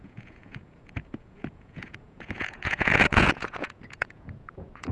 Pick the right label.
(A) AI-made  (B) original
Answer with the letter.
A